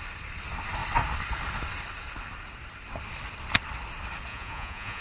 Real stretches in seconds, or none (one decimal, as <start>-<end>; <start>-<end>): 0.0-4.3